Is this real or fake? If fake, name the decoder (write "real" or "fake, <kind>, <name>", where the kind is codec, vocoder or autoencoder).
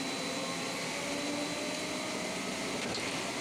real